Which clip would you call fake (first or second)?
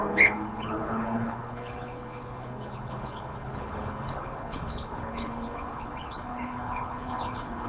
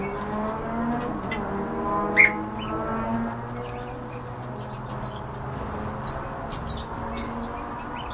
first